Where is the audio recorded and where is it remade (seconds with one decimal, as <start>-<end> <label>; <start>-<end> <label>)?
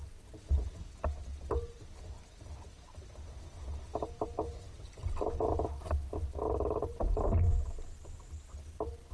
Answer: 0.0-9.1 recorded